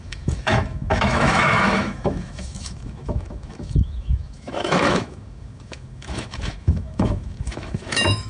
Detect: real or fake fake